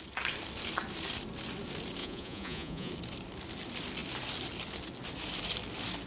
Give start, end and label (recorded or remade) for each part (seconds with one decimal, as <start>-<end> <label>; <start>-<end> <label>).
0.0-2.0 recorded; 2.0-2.9 remade; 2.9-6.1 recorded